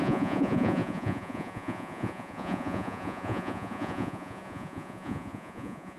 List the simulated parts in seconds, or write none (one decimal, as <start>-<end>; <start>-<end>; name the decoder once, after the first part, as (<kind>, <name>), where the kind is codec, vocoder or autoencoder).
0.0-6.0 (vocoder, Vocos)